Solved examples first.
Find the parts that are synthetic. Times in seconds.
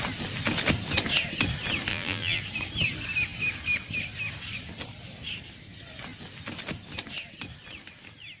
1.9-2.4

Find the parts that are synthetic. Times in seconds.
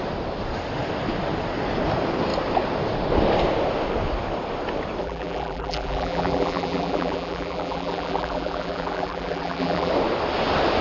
5.0-9.9